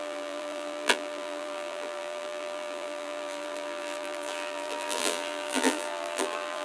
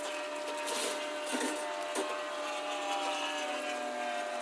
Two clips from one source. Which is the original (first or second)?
second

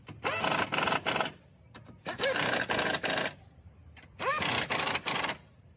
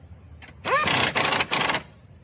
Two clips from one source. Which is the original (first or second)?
second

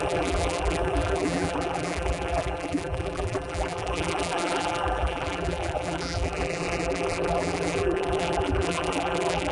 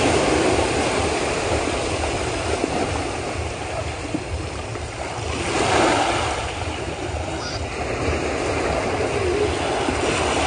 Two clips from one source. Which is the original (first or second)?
second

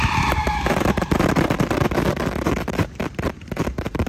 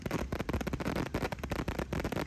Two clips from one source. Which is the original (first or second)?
second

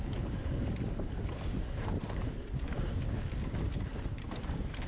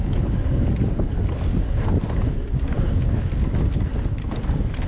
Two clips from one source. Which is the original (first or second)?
second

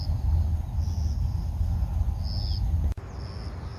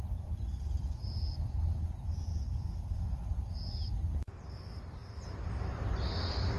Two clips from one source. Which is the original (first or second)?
first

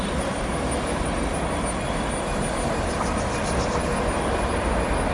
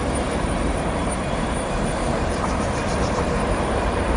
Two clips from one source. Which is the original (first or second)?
first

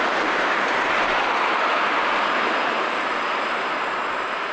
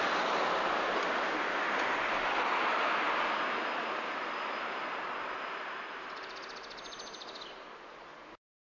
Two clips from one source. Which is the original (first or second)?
second